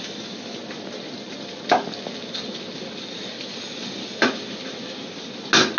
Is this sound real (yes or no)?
yes